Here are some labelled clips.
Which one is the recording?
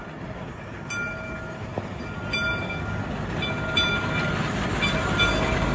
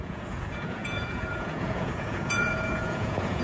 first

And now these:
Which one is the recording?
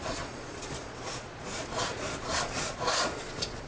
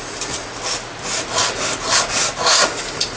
second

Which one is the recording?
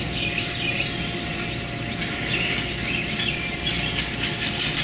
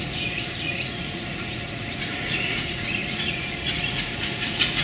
first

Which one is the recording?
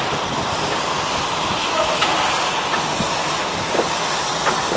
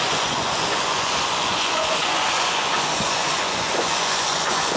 first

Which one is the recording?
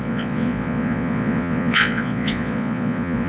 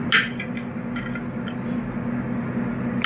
second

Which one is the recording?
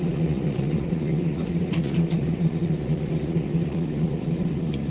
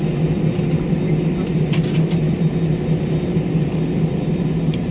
second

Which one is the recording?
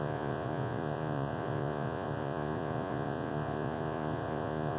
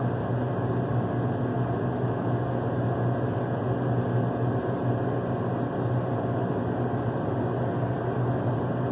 second